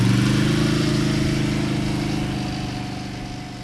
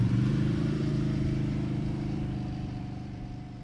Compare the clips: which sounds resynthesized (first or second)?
second